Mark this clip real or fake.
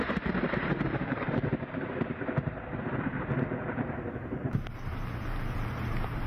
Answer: fake